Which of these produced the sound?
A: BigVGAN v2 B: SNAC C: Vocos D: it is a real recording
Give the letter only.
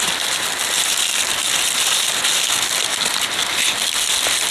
D